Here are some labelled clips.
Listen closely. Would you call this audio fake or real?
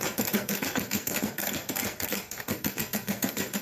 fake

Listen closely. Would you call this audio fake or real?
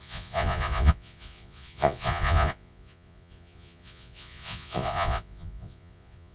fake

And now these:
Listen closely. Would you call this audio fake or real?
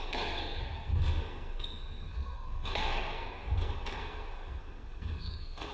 fake